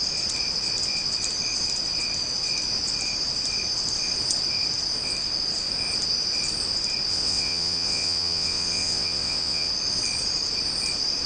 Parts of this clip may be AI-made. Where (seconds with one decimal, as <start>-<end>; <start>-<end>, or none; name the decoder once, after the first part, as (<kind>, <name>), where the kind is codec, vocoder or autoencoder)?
7.1-9.7 (vocoder, WaveNeXt)